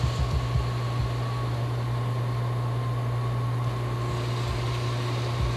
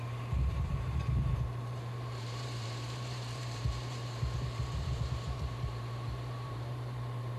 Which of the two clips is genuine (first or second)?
first